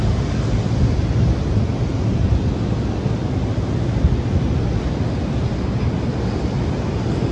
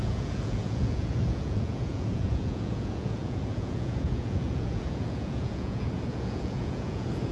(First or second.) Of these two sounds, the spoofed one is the second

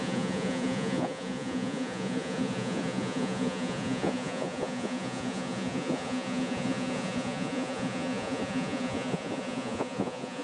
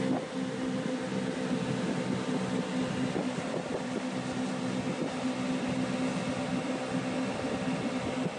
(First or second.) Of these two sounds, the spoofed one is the first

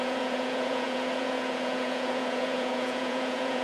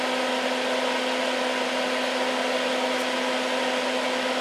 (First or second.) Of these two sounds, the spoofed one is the first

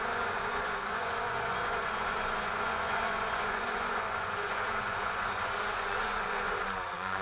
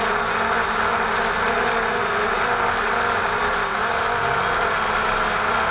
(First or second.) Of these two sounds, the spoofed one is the first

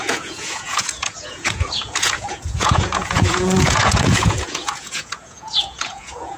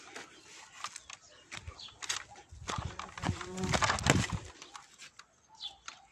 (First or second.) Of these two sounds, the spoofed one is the first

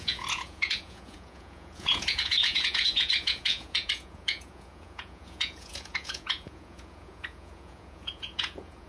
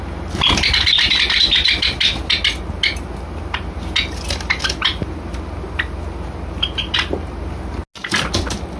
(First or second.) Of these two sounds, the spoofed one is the first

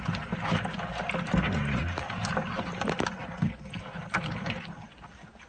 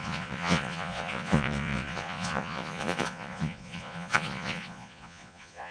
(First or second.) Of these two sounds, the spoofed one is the second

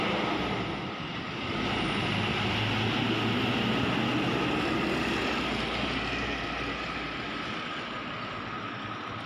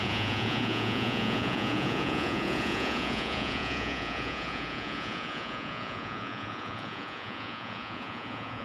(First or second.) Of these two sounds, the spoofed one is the second